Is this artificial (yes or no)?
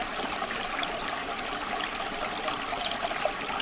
no